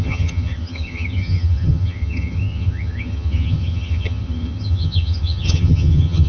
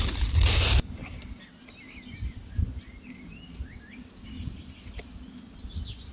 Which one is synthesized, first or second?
first